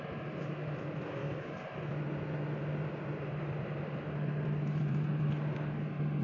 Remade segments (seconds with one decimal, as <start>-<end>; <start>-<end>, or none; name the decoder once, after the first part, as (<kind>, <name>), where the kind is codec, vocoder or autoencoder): none

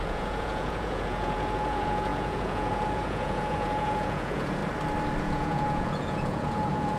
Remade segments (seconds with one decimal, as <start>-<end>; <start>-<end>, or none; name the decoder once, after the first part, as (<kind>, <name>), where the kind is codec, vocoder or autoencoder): 0.0-4.6 (vocoder, Vocos); 5.2-7.0

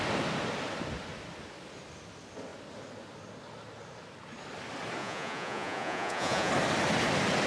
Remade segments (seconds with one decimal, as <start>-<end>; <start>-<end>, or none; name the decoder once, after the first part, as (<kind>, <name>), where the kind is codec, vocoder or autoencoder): 5.0-6.5 (vocoder, Vocos)

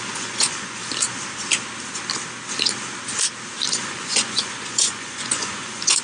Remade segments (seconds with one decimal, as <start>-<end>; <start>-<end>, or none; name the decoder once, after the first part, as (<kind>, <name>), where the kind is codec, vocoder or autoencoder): 0.0-0.8 (vocoder, Vocos); 3.7-6.0